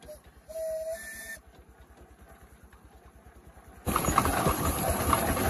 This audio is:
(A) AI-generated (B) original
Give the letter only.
B